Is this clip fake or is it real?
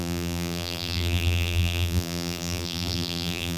fake